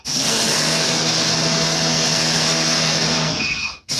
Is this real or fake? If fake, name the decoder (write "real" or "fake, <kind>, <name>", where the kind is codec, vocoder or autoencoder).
fake, codec, SNAC